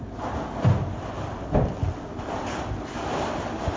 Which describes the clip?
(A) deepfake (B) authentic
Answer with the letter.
B